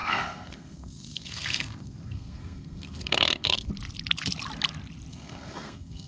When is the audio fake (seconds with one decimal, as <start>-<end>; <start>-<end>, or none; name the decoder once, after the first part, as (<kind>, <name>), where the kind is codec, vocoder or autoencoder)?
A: 0.0-3.7 (codec, SNAC); 5.1-6.1